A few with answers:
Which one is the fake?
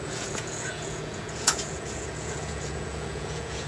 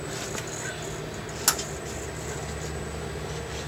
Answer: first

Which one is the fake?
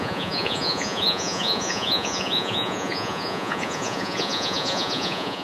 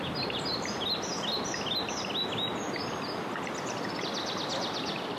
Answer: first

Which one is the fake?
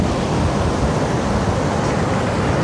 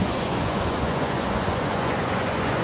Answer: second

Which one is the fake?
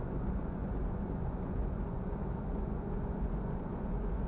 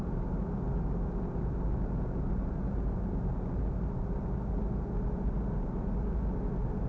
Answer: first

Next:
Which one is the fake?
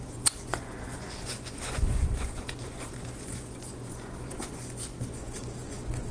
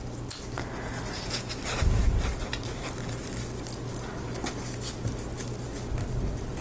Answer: first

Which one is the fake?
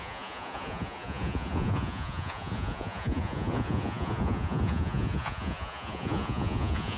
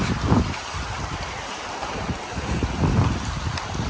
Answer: first